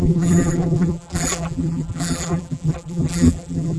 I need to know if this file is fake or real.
fake